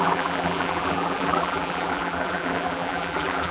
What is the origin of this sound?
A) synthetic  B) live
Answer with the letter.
A